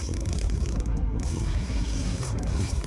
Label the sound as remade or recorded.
remade